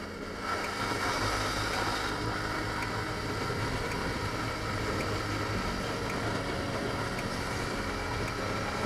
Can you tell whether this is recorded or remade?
recorded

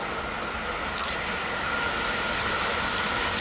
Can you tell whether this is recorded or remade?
recorded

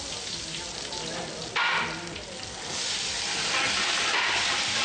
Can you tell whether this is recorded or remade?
recorded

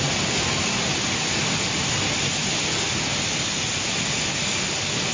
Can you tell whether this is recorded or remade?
recorded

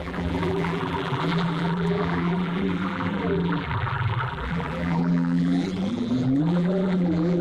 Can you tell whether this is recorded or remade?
remade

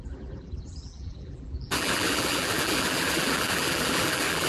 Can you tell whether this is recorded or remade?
remade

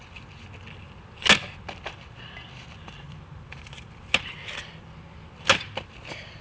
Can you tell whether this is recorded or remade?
recorded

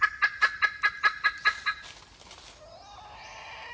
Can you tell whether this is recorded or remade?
recorded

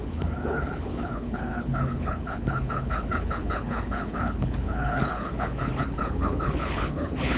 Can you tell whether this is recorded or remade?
remade